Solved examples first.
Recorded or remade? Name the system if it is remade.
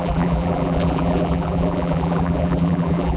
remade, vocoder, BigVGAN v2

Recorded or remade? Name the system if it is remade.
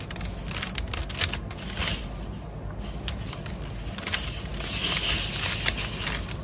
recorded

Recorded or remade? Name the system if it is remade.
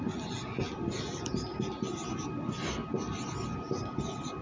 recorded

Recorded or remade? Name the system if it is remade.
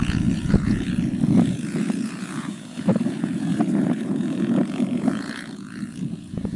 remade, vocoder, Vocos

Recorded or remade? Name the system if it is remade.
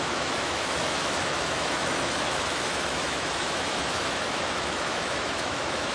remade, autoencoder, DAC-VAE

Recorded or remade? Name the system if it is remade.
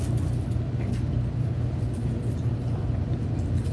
recorded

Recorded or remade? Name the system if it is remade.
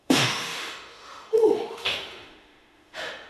remade, autoencoder, DAC-VAE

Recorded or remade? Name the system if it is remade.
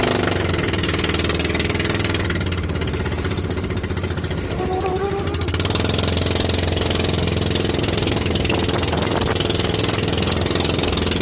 recorded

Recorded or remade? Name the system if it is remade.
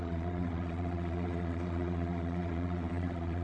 remade, vocoder, Vocos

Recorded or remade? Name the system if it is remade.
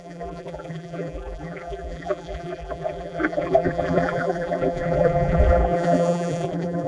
remade, vocoder, BigVGAN v2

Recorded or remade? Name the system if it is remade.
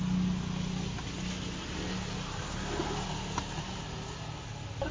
recorded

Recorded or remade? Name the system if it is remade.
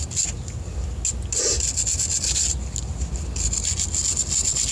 recorded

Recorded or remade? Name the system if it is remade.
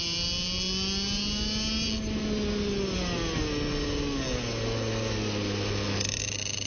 recorded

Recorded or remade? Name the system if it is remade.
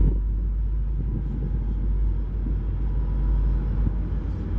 recorded